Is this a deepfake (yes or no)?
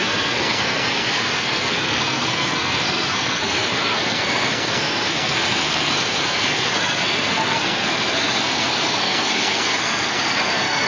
yes